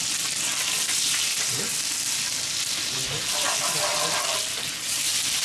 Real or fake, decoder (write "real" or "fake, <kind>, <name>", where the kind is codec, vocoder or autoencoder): real